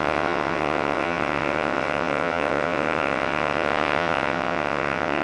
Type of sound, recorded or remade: remade